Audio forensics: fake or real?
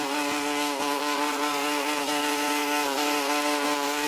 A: fake